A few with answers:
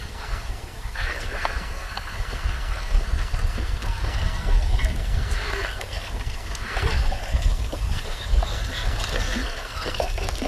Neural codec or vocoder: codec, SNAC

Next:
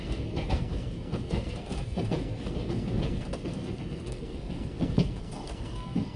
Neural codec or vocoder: codec, SNAC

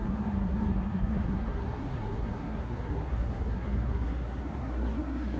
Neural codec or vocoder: codec, SNAC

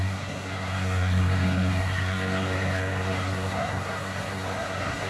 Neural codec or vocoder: codec, SNAC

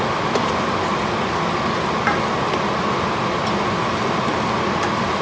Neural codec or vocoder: none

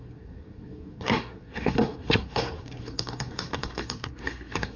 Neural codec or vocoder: codec, SNAC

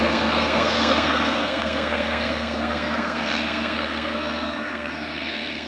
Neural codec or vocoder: codec, SNAC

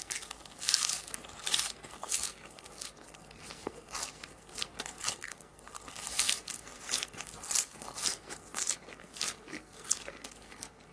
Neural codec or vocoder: codec, SNAC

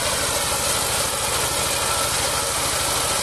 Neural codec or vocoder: none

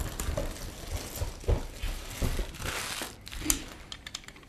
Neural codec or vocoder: none